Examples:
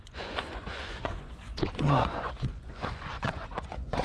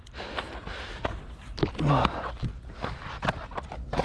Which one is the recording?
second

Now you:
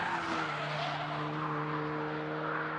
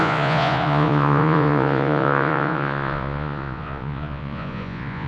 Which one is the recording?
first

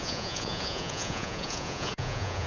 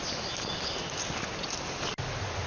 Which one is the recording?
second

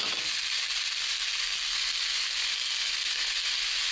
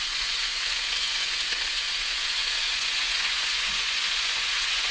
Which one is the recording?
first